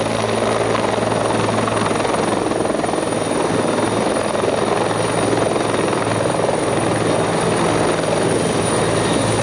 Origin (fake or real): real